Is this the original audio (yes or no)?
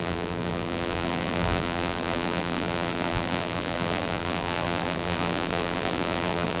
no